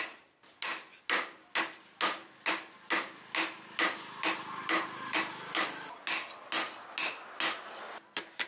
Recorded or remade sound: recorded